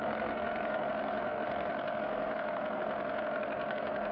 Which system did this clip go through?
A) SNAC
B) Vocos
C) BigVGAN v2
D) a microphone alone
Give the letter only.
A